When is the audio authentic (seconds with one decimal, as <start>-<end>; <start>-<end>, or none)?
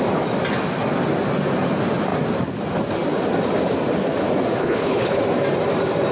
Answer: 0.0-4.6; 5.2-6.1